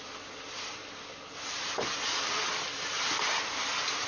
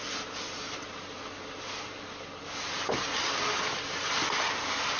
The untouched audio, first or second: second